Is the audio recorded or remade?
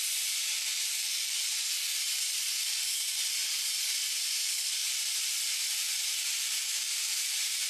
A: remade